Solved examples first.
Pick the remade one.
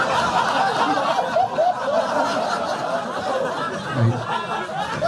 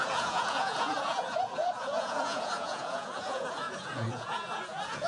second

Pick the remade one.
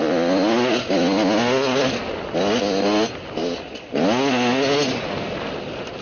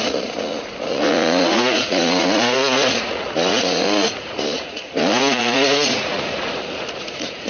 second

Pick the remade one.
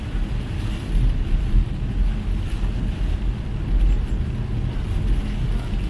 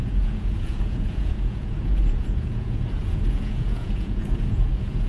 second